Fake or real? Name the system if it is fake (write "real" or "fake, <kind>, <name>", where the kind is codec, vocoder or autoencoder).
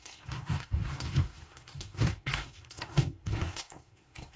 fake, codec, SNAC